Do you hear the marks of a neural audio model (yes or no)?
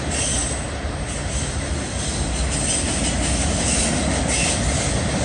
no